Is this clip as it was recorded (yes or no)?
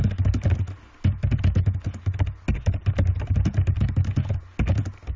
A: yes